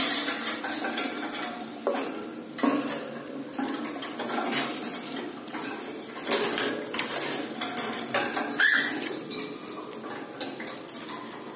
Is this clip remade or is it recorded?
recorded